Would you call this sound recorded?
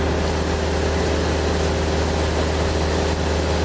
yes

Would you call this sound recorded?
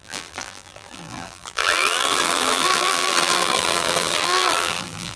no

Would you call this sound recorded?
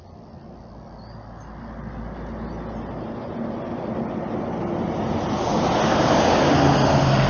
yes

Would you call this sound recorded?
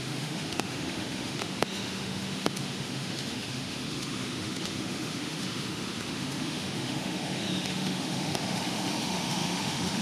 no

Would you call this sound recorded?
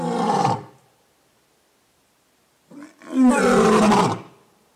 yes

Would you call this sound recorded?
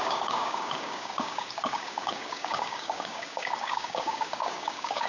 no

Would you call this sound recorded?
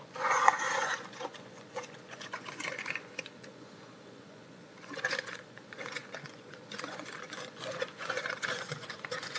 no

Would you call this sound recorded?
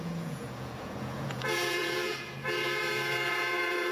no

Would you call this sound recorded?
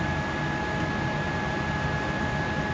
yes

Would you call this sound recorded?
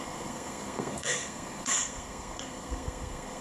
no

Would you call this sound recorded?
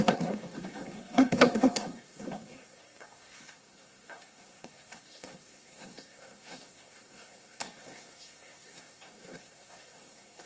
no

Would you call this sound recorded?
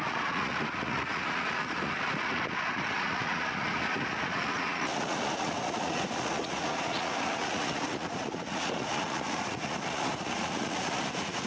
no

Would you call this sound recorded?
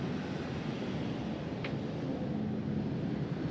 yes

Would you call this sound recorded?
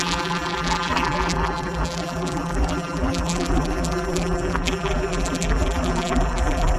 no